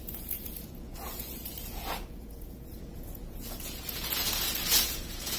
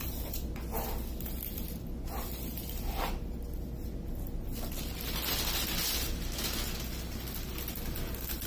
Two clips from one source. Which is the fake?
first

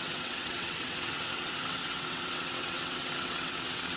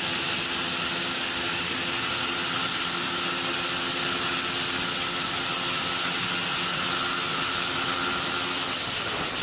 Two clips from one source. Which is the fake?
first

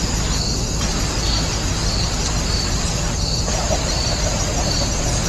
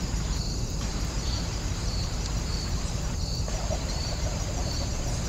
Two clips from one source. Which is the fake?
second